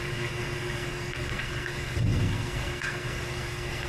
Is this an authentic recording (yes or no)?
no